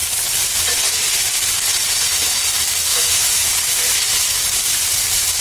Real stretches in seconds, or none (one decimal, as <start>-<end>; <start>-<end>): 0.0-2.9; 3.5-5.4